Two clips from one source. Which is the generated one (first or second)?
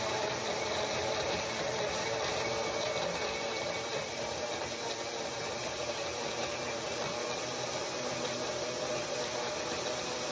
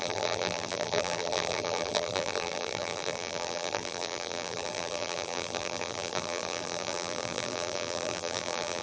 second